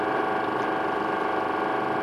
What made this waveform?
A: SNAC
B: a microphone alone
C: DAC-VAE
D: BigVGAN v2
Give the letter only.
B